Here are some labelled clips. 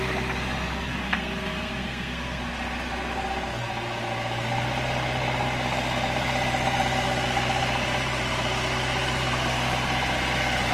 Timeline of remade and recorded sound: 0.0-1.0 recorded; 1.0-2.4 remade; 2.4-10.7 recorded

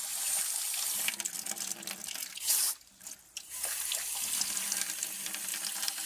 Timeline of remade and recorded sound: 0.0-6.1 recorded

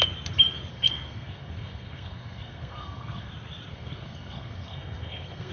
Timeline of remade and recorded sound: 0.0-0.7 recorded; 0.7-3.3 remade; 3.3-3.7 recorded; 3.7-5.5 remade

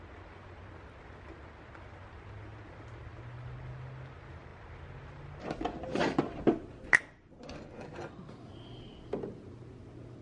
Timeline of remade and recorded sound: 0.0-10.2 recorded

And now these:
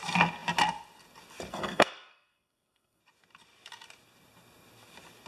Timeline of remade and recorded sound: 0.0-1.5 recorded; 1.5-3.0 remade; 3.0-5.3 recorded

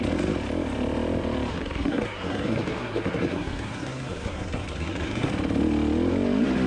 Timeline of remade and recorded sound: 0.0-1.5 recorded; 1.5-5.3 remade; 5.3-6.7 recorded

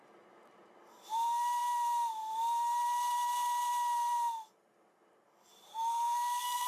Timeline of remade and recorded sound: 0.0-5.7 recorded; 5.7-6.7 remade

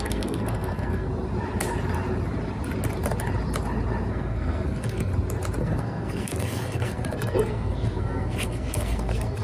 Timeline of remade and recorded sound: 0.0-1.1 remade; 1.1-4.1 recorded; 4.1-5.1 remade; 5.1-5.6 recorded; 5.6-9.4 remade